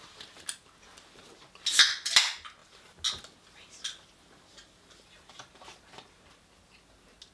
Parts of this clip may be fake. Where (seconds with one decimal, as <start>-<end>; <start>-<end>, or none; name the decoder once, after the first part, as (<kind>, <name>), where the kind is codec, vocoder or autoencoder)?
none